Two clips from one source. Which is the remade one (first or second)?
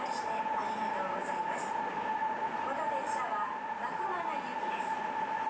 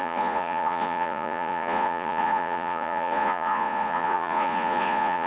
second